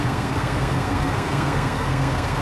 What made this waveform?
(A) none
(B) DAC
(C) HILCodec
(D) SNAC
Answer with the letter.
D